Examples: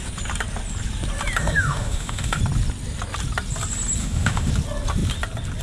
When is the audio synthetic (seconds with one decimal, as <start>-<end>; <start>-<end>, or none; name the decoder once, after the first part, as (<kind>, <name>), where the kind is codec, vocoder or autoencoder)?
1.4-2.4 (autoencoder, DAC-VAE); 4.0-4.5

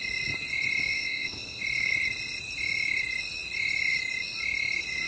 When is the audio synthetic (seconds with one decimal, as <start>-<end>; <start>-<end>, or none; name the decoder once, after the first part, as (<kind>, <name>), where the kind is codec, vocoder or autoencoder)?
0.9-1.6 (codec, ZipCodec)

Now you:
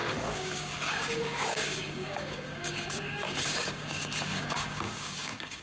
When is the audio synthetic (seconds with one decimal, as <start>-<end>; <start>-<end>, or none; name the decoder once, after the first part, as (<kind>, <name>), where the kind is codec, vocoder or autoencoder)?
0.0-5.6 (codec, DAC)